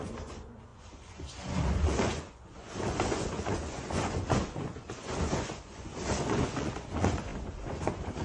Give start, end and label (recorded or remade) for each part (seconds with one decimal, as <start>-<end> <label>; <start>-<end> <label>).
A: 0.0-8.2 remade